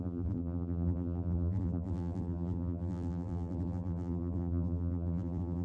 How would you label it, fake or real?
fake